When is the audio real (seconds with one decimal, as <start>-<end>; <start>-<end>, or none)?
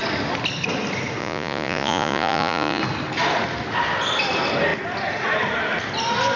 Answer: 0.0-1.2; 2.8-6.4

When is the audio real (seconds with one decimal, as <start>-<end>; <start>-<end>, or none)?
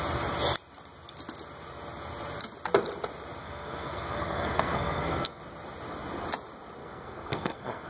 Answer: 0.0-3.4; 5.4-6.8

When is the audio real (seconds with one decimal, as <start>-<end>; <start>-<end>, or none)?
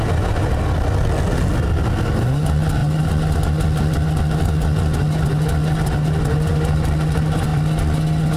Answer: 0.0-8.4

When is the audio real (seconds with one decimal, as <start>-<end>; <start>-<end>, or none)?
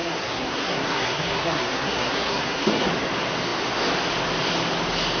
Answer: 2.9-5.2